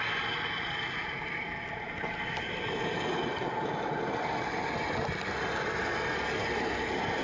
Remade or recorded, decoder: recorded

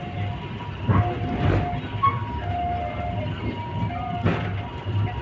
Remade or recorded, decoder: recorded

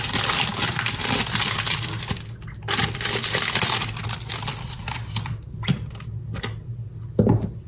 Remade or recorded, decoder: recorded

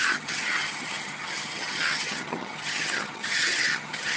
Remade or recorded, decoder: remade, vocoder, HiFi-GAN